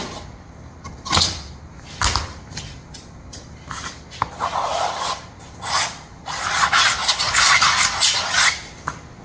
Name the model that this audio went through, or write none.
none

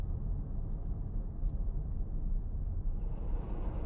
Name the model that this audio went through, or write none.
none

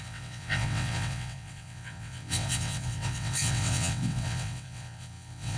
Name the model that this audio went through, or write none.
vocoder, WaveNeXt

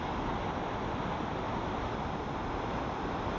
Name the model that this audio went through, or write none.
none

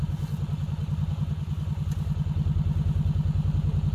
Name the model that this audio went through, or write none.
none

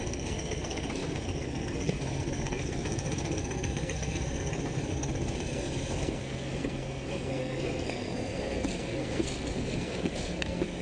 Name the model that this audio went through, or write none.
codec, SNAC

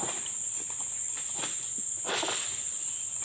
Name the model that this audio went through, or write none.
none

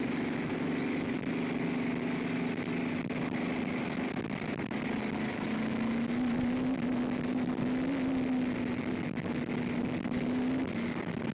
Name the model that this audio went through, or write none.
none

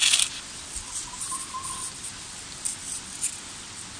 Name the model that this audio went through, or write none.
none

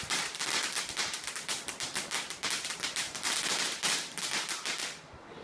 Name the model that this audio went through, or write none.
vocoder, BigVGAN v2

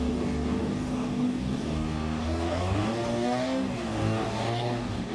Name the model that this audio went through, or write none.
codec, DAC